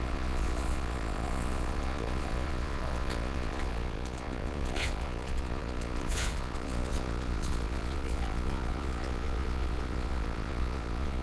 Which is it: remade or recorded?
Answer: remade